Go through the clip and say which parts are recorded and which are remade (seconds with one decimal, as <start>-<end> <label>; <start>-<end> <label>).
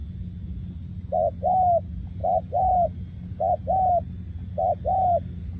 0.0-5.6 recorded